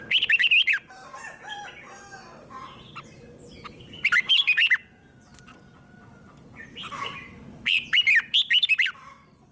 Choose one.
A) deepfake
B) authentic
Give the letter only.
B